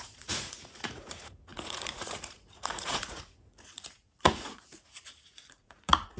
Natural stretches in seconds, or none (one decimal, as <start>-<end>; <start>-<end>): none